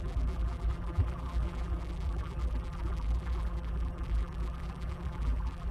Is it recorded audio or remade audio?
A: remade